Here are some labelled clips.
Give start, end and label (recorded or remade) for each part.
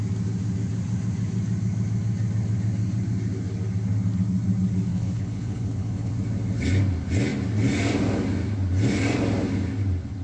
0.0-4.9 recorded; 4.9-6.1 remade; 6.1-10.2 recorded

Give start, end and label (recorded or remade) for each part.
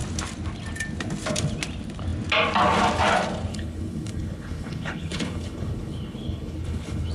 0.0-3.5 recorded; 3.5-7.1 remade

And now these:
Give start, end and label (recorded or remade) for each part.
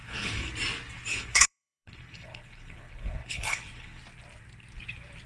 0.0-0.5 remade; 0.5-1.1 recorded; 1.1-4.0 remade; 4.0-5.3 recorded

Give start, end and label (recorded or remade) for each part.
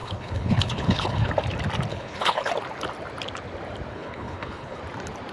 0.0-1.3 remade; 1.3-1.9 recorded; 1.9-2.5 remade; 2.5-3.9 recorded; 3.9-4.8 remade; 4.8-5.3 recorded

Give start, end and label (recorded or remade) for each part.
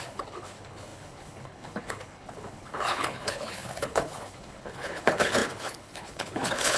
0.0-6.8 remade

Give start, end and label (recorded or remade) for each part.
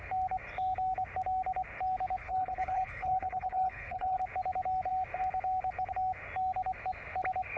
0.0-2.2 recorded; 2.2-4.2 remade; 4.2-7.6 recorded